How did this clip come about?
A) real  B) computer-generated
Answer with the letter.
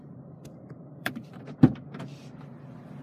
B